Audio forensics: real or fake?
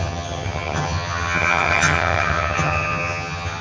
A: fake